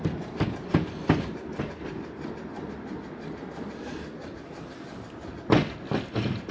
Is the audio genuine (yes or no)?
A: yes